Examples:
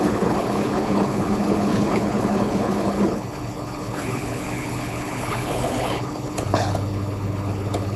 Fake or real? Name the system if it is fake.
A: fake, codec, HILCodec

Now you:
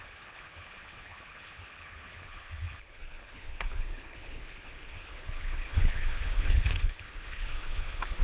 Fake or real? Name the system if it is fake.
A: fake, codec, HILCodec